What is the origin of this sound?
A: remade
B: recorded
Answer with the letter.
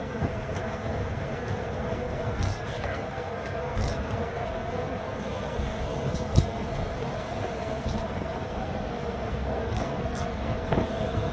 A